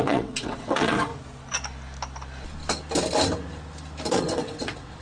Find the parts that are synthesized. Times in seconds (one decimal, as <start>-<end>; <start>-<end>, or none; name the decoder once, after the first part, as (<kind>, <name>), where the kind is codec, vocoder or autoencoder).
0.0-1.1 (vocoder, WaveNeXt); 4.1-5.0